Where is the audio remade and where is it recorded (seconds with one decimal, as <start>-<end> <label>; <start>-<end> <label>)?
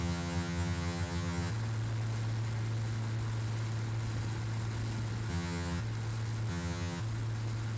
0.0-1.5 remade; 1.5-5.3 recorded; 5.3-5.8 remade; 5.8-6.5 recorded; 6.5-7.0 remade; 7.0-7.8 recorded